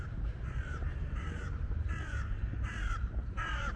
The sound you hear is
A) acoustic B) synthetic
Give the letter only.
B